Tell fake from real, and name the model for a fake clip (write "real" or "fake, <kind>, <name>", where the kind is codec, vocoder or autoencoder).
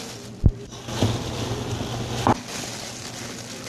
real